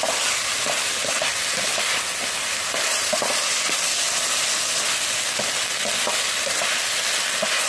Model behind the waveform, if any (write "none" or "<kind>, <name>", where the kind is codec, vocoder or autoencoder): none